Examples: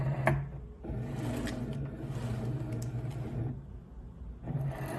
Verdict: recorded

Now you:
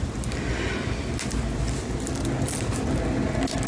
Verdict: recorded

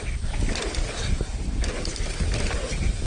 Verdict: recorded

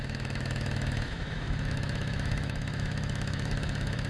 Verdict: remade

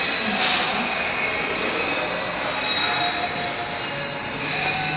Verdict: recorded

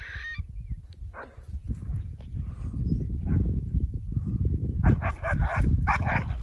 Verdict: recorded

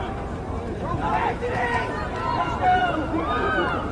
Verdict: remade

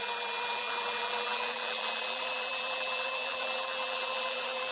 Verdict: remade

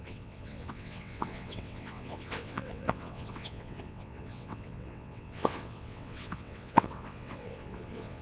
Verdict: remade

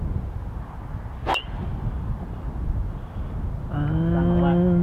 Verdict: recorded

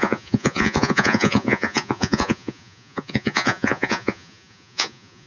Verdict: remade